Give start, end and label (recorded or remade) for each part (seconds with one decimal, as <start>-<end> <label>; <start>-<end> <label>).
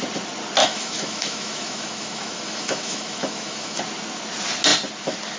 0.0-0.6 recorded; 0.6-3.8 remade; 3.8-5.4 recorded